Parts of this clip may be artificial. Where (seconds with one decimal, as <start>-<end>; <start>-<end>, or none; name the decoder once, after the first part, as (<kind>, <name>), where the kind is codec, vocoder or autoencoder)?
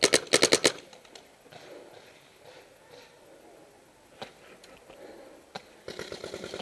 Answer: none